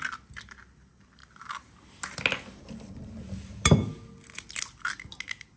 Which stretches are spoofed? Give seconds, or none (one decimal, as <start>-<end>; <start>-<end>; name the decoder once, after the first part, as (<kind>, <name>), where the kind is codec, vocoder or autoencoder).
none